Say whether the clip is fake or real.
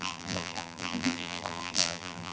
fake